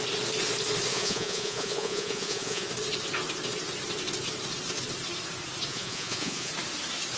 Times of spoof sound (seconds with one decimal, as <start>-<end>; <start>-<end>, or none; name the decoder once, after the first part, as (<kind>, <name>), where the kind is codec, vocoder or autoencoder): 0.9-2.7 (vocoder, Vocos); 5.7-6.5